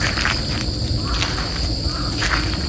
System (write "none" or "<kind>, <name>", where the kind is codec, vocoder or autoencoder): none